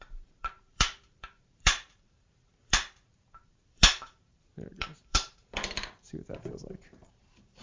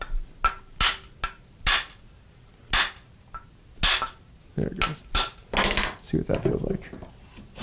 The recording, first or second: second